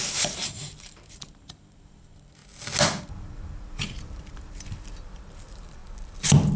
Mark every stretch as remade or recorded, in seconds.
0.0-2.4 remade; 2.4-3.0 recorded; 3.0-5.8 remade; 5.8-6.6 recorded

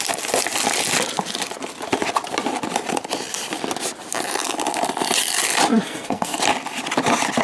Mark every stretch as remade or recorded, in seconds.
0.0-5.7 recorded; 5.7-6.4 remade; 6.4-7.4 recorded

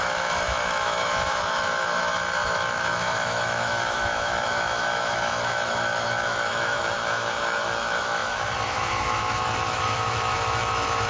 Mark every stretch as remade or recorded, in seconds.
0.0-11.1 remade

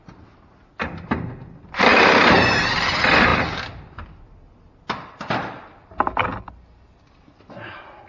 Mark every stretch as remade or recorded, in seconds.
0.0-1.9 recorded; 1.9-2.6 remade; 2.6-8.1 recorded